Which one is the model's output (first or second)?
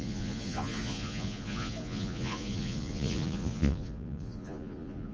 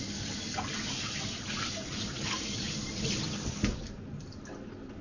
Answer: first